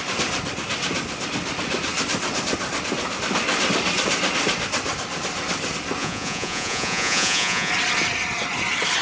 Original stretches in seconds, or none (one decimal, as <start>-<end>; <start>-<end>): 0.0-6.0; 7.7-9.0